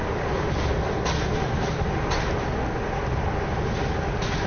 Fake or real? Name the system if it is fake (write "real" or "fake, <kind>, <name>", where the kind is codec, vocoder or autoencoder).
real